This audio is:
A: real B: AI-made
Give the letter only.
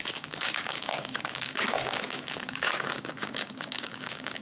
B